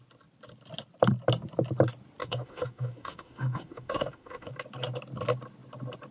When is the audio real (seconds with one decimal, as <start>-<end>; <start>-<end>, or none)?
0.0-2.2; 4.5-6.1